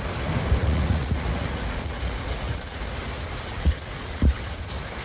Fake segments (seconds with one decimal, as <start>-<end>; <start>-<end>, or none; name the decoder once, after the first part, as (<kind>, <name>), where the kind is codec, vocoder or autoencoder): 0.6-2.8 (vocoder, Vocos); 3.5-4.4